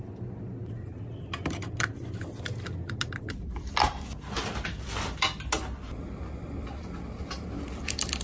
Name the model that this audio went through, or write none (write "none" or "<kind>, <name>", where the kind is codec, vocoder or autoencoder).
none